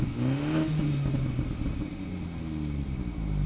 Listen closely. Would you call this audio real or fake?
real